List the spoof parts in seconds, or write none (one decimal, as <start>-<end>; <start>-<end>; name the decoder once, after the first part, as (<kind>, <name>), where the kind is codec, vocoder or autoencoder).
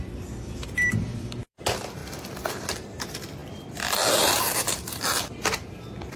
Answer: 0.0-2.0 (vocoder, BigVGAN v2); 2.9-3.4; 4.1-6.2